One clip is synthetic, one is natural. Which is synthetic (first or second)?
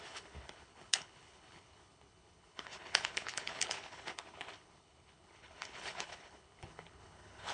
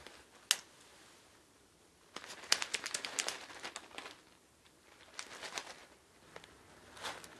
first